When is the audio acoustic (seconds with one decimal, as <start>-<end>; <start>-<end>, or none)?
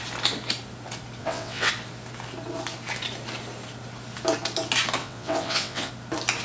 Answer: 0.0-1.2; 1.7-5.0; 5.9-6.4